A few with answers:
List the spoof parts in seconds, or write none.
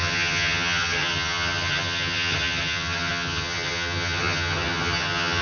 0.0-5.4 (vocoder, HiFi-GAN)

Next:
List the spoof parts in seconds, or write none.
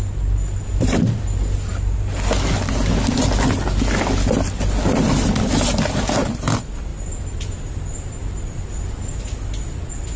none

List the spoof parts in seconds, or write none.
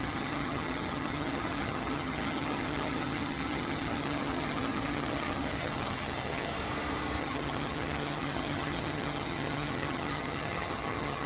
0.0-6.5 (vocoder, HiFi-GAN); 7.2-11.3